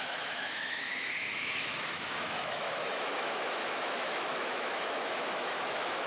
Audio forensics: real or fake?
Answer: fake